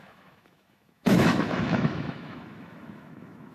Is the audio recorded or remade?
remade